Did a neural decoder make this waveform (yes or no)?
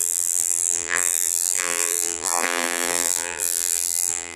yes